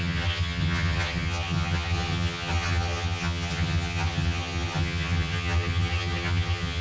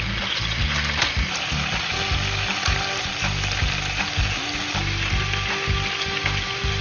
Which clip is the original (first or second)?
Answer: second